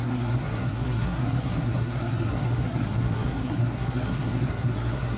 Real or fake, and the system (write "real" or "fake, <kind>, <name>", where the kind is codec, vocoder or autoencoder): fake, codec, SNAC